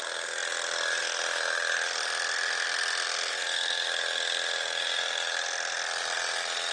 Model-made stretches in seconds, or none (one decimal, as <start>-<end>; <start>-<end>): none